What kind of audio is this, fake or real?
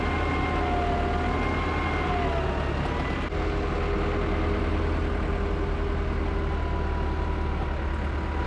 real